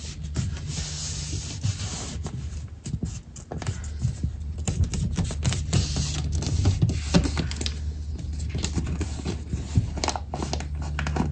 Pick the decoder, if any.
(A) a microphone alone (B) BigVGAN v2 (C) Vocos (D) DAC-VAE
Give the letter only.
A